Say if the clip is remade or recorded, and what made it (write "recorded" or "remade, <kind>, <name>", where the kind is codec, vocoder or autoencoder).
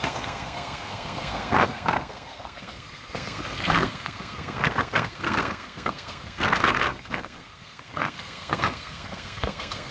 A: remade, codec, SNAC